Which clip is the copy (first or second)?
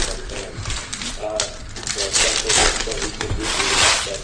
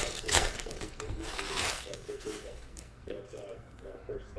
second